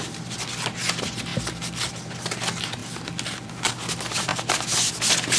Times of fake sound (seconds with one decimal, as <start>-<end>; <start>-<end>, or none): none